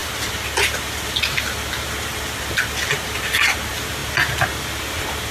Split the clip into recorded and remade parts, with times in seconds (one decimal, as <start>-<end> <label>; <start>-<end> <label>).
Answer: 0.0-5.3 recorded

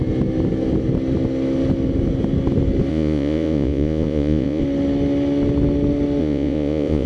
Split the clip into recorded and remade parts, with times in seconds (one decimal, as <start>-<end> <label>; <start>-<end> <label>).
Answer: 0.0-2.9 recorded; 2.9-4.6 remade; 4.6-6.2 recorded; 6.2-7.1 remade

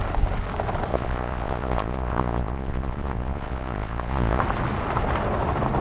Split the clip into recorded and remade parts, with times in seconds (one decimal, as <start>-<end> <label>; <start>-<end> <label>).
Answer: 0.0-0.9 recorded; 0.9-4.4 remade; 4.4-5.8 recorded